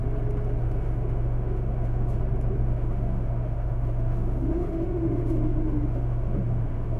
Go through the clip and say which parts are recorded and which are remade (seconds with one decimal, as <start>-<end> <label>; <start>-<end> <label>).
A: 0.0-0.6 recorded; 0.6-2.2 remade; 2.2-2.6 recorded; 2.6-7.0 remade